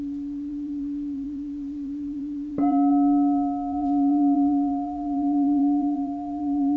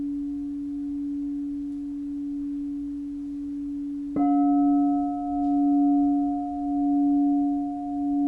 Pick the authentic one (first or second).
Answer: second